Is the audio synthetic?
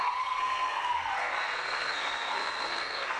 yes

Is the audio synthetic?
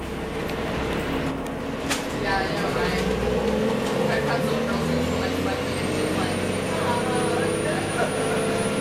no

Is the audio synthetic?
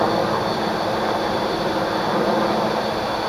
no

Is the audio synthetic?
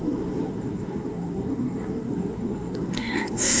yes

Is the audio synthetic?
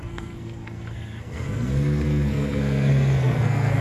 yes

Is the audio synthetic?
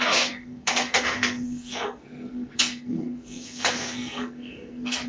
yes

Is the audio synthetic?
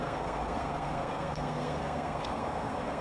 yes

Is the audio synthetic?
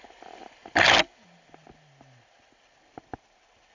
no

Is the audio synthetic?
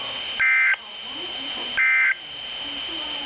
no